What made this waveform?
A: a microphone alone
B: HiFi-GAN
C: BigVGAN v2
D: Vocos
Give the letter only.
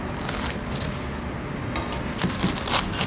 A